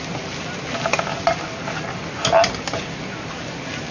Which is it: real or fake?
real